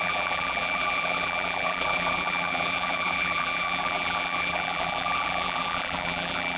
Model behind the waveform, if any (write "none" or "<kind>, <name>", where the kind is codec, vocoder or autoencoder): vocoder, BigVGAN v2